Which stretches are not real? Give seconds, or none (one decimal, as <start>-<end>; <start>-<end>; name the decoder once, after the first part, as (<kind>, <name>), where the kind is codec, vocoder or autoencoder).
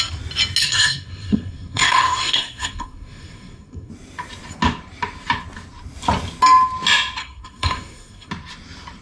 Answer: 0.6-3.9 (codec, SNAC); 7.2-8.3